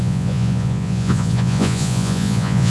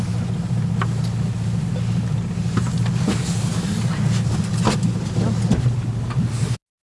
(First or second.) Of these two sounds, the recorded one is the second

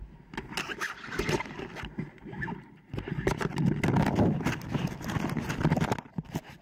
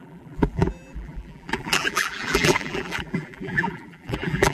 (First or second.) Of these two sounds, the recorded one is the first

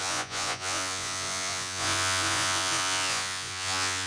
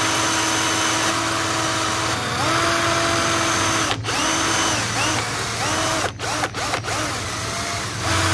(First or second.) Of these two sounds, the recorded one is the second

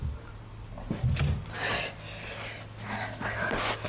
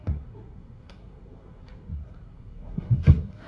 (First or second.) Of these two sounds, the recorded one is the first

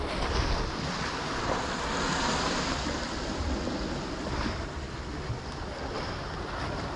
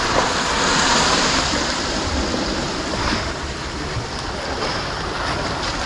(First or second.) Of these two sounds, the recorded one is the first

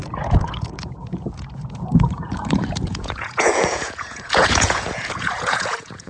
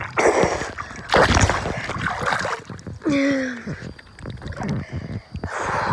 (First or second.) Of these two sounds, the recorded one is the second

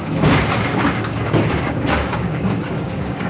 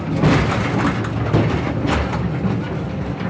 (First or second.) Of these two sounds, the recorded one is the second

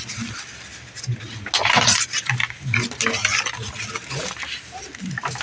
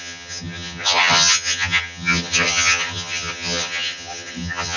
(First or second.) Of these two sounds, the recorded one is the first